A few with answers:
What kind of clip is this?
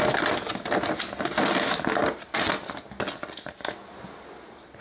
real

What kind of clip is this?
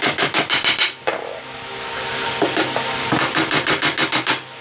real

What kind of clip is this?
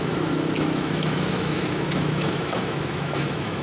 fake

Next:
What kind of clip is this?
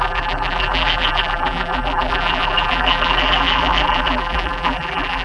fake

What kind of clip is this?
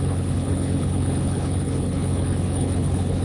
fake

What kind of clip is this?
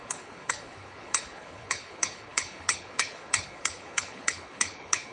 fake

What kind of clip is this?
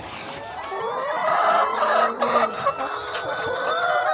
real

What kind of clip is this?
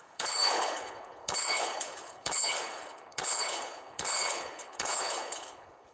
fake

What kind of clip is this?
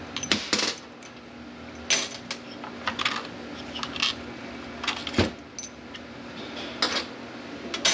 real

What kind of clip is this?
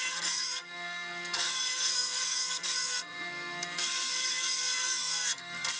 fake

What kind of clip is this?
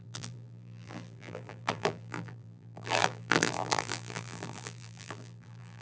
fake